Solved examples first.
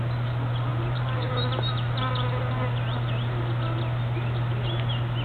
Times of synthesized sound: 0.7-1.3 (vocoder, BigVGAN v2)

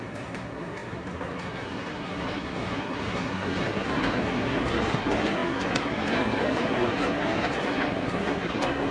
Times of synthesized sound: 0.0-8.9 (codec, SNAC)

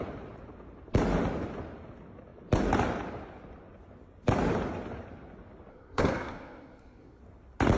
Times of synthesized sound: 5.7-7.2 (codec, SNAC)

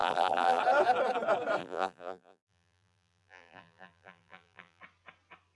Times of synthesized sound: 0.0-0.6 (vocoder, BigVGAN v2); 1.6-4.8

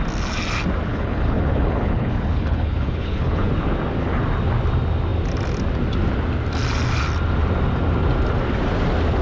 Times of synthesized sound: 0.9-3.5 (codec, HILCodec)

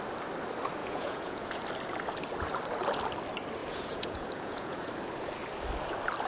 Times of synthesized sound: 0.8-1.6 (vocoder, Vocos); 3.6-4.9

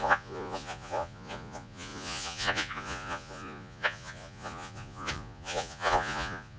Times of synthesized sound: 0.0-6.6 (vocoder, Vocos)